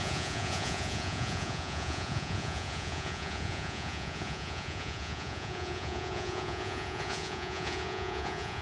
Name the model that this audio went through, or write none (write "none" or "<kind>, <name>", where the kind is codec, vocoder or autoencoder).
vocoder, Vocos